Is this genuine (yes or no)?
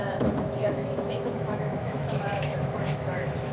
no